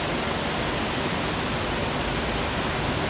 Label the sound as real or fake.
real